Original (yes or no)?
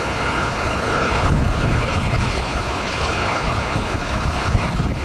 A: no